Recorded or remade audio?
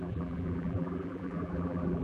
remade